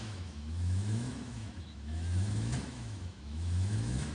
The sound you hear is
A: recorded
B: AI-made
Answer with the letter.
B